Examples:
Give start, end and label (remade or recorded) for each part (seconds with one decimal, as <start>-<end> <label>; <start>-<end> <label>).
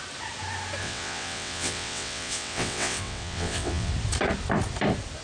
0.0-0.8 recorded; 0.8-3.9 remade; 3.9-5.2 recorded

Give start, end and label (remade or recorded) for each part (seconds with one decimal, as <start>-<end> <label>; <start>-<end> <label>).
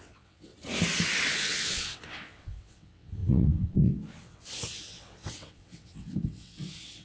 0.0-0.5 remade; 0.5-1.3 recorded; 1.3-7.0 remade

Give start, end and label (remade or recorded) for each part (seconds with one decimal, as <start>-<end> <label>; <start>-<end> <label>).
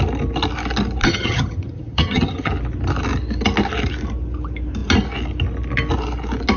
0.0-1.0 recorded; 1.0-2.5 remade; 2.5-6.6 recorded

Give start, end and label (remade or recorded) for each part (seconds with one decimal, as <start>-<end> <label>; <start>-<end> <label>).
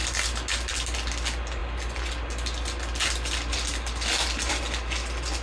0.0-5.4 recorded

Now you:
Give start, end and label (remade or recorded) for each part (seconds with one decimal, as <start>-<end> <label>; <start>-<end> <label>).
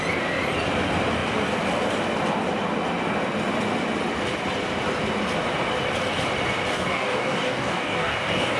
0.0-6.7 recorded; 6.7-8.6 remade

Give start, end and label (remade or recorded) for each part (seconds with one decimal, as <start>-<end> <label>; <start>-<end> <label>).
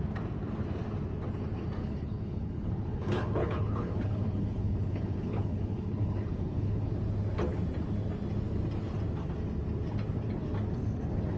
0.0-1.8 recorded; 1.8-6.9 remade; 6.9-11.4 recorded